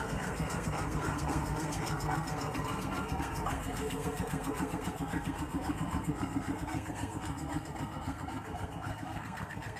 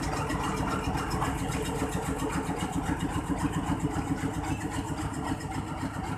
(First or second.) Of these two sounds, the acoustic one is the second